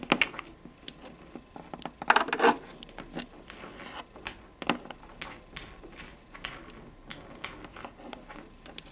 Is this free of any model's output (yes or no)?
yes